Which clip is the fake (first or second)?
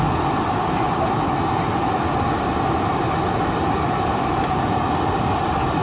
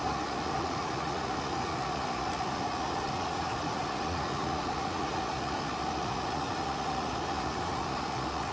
second